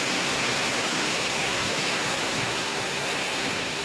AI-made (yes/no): yes